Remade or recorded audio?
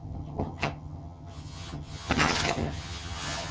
remade